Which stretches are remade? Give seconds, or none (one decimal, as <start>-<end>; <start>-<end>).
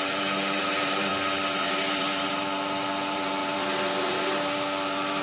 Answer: 0.0-1.1; 1.6-5.2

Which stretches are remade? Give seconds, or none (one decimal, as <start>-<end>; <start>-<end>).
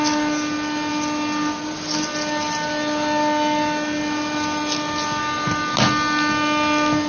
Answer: none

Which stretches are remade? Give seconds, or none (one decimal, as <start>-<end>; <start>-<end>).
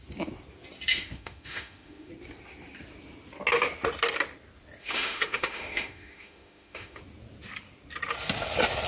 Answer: 0.9-2.1; 4.8-7.0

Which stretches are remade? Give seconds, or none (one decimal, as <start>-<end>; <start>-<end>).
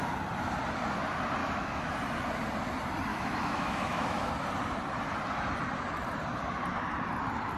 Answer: 1.4-1.9; 3.1-4.3